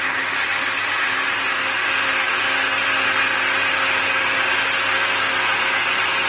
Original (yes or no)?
yes